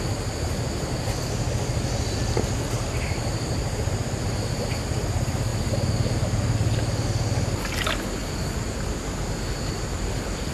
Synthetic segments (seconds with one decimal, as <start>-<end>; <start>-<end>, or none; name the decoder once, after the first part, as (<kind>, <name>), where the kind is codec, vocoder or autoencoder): none